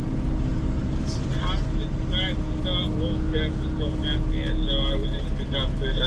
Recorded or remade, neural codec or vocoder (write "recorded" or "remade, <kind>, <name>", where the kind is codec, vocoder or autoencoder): recorded